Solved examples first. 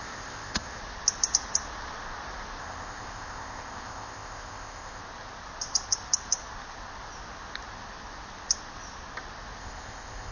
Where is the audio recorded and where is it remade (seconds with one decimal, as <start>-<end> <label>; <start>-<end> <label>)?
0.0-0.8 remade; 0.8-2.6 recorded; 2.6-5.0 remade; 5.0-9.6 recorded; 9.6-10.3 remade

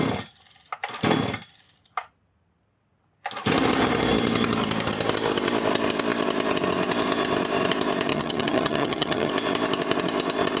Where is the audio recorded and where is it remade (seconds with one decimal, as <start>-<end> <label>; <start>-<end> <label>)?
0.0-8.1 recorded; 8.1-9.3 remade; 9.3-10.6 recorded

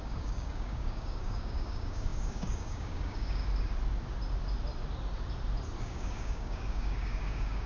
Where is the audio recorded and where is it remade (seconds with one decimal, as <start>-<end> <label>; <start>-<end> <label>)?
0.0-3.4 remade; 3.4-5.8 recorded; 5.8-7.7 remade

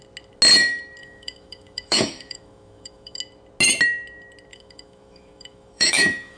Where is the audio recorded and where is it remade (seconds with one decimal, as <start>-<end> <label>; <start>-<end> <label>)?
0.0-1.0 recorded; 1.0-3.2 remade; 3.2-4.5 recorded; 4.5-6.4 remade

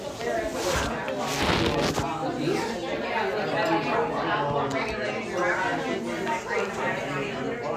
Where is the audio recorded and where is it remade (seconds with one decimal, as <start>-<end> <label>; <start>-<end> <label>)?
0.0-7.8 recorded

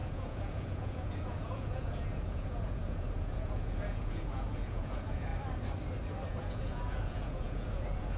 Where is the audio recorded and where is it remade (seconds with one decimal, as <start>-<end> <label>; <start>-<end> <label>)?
0.0-5.3 remade; 5.3-6.3 recorded; 6.3-8.2 remade